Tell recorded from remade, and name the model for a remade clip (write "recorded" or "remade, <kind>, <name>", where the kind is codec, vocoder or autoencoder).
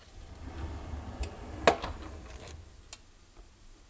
recorded